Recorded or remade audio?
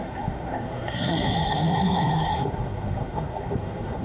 remade